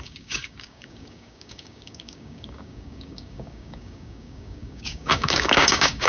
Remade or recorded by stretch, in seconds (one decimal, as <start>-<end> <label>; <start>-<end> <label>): 0.0-6.1 remade